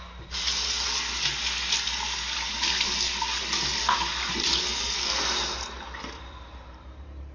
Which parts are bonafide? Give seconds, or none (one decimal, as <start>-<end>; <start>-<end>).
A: 0.0-4.5; 5.1-7.3